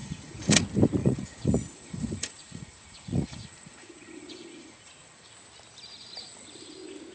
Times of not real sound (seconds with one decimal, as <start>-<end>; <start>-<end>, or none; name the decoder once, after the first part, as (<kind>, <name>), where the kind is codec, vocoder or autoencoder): 0.0-0.6 (vocoder, Vocos); 1.0-5.3